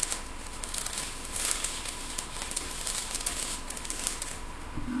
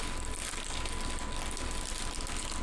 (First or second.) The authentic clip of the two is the second